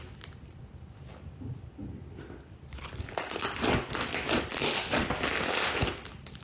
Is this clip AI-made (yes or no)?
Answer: no